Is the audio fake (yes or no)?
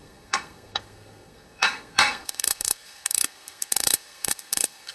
yes